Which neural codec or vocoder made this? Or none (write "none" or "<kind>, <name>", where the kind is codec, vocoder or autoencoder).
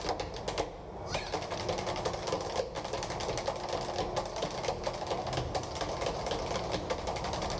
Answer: none